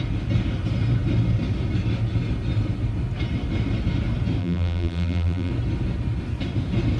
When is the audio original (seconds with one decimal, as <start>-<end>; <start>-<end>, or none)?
0.0-4.4; 5.5-7.0